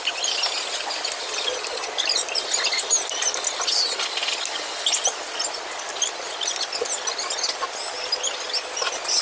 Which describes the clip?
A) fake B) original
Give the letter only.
B